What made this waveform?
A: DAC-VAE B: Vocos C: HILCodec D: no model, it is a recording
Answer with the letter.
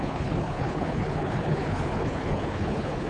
C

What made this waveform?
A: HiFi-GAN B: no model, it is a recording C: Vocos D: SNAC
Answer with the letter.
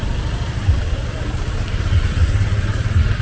B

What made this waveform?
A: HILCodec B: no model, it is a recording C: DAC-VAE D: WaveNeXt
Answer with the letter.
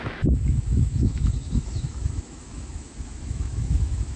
C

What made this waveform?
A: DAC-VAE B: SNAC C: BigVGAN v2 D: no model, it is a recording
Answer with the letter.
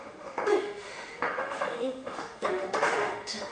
A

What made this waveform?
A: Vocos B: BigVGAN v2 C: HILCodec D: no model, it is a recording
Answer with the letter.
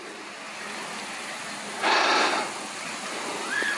D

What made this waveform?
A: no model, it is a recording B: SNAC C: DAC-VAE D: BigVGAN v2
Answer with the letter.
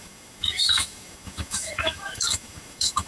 C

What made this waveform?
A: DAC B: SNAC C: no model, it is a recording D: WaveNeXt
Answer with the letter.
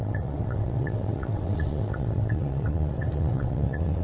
D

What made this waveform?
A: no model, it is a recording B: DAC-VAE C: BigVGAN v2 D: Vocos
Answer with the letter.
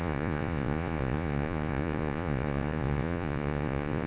D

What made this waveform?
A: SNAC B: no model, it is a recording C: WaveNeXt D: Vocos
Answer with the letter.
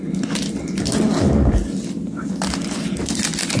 B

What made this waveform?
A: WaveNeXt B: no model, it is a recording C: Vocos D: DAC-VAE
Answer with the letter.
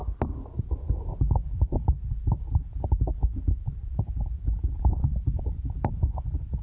B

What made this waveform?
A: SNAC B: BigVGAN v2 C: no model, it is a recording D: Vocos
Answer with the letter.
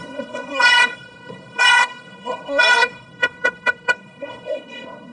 A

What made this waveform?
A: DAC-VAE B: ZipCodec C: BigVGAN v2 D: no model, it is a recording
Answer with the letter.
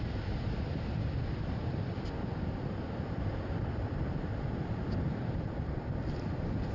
D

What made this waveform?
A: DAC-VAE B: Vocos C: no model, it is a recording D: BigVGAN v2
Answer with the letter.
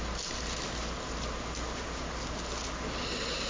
C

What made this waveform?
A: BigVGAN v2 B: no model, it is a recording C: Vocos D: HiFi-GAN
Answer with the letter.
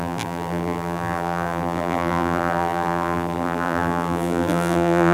A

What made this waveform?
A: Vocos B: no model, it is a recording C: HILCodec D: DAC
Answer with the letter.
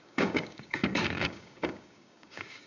D